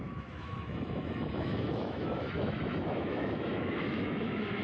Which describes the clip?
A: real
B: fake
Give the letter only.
B